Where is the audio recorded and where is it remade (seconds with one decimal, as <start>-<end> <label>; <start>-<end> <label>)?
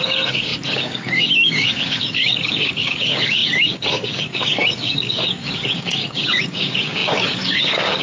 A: 0.0-8.0 remade